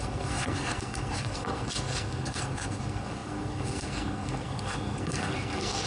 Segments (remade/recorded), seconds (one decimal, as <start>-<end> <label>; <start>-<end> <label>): 0.0-5.9 remade